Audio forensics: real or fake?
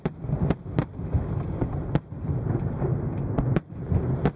real